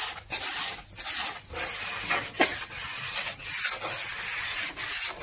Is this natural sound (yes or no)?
yes